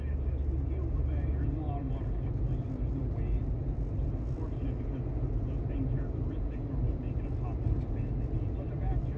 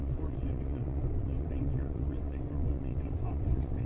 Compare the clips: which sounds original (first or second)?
first